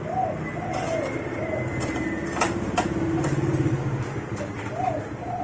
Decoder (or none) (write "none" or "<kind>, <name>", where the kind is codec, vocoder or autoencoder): none